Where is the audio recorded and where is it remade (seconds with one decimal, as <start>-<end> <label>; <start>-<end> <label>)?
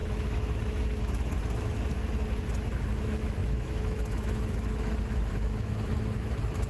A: 0.0-2.0 remade; 2.0-2.9 recorded; 2.9-6.7 remade